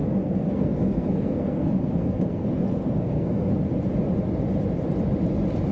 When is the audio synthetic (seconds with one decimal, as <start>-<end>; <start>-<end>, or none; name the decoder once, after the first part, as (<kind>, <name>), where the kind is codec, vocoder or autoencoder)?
0.0-2.5 (codec, SNAC); 3.0-3.5